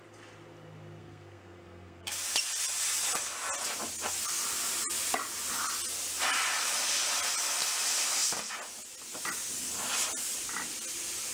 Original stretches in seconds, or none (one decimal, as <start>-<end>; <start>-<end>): 0.0-1.0; 2.1-11.3